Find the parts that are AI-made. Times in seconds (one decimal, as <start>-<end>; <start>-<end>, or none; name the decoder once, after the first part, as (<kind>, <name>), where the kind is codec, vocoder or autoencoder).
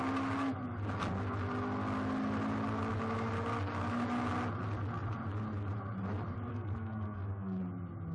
6.5-7.6 (codec, SNAC)